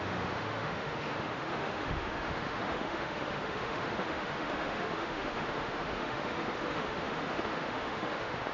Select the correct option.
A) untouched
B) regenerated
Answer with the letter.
B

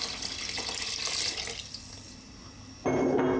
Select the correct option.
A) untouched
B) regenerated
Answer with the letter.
A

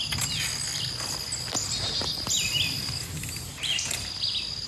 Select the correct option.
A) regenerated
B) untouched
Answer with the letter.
B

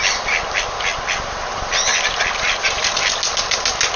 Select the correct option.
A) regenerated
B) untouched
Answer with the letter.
B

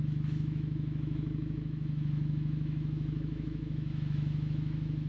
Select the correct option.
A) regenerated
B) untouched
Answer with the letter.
A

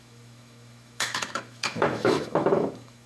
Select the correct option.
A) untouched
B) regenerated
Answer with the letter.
B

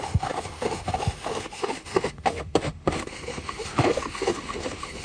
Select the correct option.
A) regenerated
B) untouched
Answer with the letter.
A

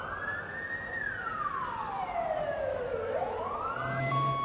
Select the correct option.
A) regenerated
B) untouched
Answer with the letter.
B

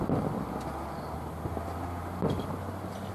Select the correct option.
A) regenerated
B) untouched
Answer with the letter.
B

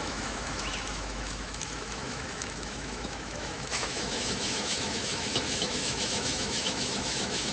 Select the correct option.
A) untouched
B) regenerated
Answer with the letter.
B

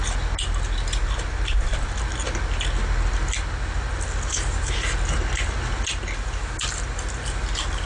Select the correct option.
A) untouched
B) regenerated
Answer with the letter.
A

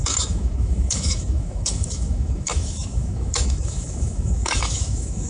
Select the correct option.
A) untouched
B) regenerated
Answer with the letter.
B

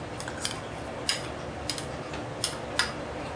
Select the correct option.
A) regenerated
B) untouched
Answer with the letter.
B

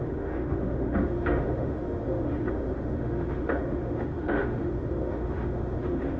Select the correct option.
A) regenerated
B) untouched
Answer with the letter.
A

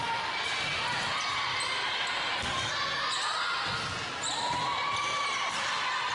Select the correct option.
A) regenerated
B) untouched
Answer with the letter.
B